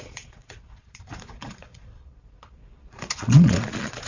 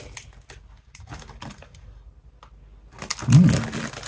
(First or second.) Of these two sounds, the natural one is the second